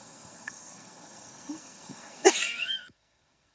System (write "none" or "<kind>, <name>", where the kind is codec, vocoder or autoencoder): codec, SNAC